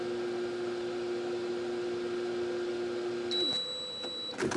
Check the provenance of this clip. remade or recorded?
recorded